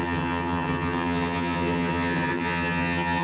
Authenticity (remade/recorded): remade